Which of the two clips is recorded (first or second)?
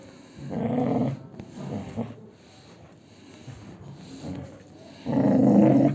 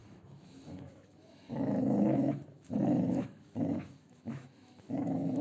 first